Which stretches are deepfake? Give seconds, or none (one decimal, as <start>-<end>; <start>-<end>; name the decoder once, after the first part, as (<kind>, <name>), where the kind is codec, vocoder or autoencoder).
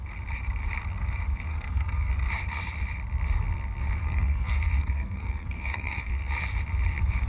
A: 1.5-2.1 (codec, SNAC); 4.0-6.1